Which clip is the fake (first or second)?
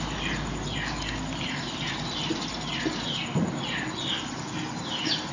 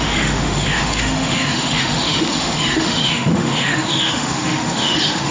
second